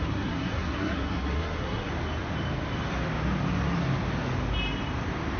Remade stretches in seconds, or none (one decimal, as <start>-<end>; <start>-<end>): 0.0-1.9